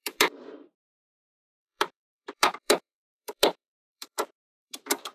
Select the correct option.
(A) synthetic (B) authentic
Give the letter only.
A